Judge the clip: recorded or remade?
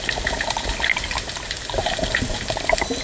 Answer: recorded